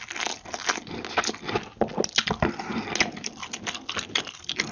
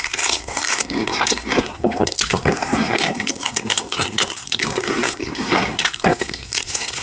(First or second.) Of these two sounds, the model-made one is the second